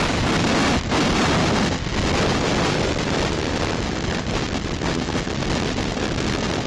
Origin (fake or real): real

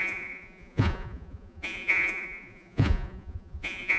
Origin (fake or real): fake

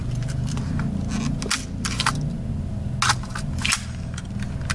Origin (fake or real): real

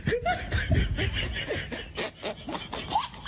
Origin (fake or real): real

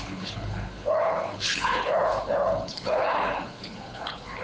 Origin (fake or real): fake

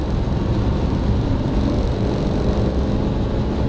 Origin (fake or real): real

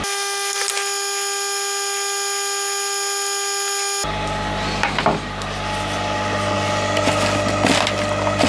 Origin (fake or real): real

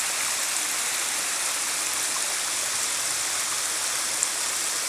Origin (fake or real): real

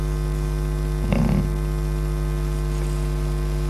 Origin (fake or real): real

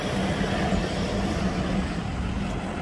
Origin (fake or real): real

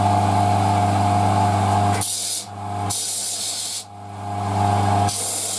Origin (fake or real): real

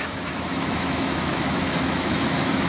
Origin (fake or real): fake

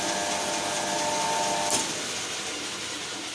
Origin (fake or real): real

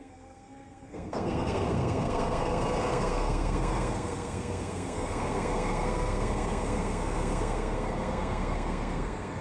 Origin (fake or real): fake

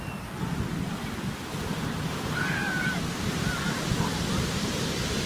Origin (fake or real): real